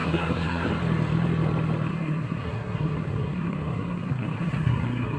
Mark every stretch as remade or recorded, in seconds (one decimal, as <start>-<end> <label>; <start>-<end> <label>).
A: 0.0-0.7 remade; 0.7-1.9 recorded; 1.9-5.2 remade